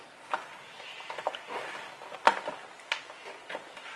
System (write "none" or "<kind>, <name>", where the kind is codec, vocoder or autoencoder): none